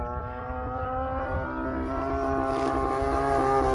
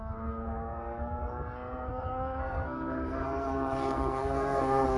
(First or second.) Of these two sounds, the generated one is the second